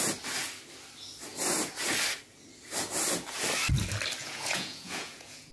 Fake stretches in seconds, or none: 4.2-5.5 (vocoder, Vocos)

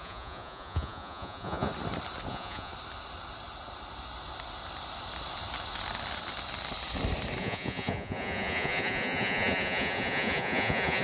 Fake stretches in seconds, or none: 0.0-1.7 (vocoder, Vocos); 2.3-2.7; 7.4-11.0

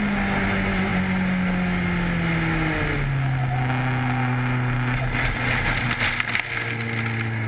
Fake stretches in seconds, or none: none

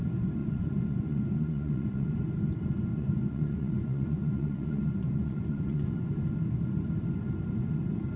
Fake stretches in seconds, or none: 0.4-2.1 (vocoder, Vocos); 2.9-5.9